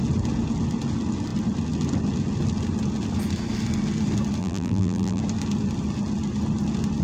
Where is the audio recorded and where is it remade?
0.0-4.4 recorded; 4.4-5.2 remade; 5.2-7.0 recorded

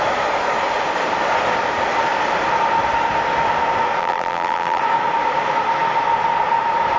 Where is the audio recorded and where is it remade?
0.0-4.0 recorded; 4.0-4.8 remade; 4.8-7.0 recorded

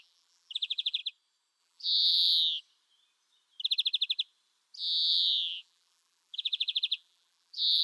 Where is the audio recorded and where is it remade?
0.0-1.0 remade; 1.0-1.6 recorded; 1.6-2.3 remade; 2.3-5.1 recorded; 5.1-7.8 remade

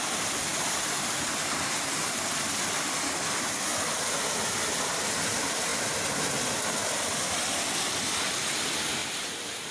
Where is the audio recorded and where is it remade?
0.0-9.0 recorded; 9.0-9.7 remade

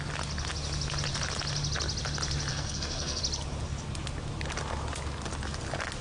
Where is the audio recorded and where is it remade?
0.0-2.5 recorded; 2.5-3.2 remade; 3.2-6.0 recorded